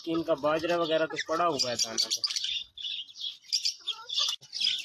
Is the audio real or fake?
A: fake